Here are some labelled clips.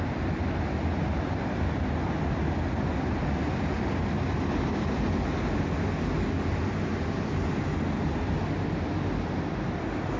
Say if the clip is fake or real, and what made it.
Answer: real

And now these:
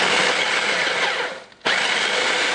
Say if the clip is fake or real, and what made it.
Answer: real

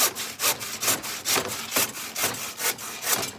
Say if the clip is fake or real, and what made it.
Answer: real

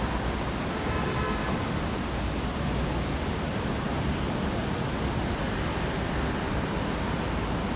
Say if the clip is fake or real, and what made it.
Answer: real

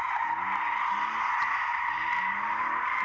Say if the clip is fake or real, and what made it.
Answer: real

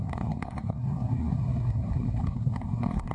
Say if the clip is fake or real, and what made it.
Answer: fake, codec, SNAC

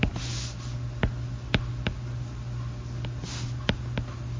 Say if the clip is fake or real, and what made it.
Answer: real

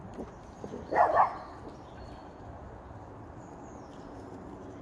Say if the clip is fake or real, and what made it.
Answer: real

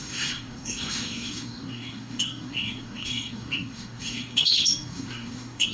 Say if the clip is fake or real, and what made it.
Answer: fake, codec, SNAC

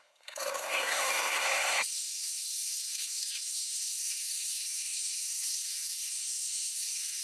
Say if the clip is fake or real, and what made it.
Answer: fake, codec, SNAC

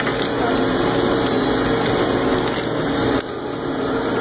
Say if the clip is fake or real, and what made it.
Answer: real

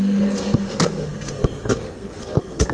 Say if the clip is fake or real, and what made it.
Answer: fake, codec, SNAC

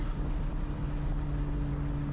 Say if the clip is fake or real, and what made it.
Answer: real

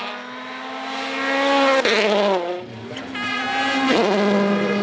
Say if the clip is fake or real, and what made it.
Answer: real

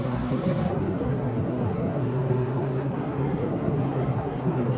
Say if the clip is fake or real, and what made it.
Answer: fake, codec, SNAC